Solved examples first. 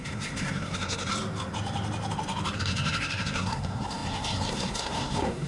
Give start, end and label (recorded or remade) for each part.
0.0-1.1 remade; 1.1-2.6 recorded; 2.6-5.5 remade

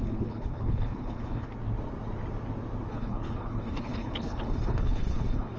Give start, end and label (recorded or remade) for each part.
0.0-1.5 remade; 1.5-2.9 recorded; 2.9-5.6 remade

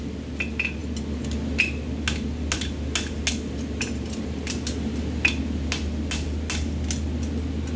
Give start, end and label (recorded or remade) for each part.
0.0-7.8 recorded

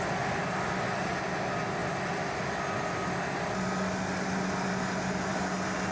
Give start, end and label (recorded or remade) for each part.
0.0-5.9 recorded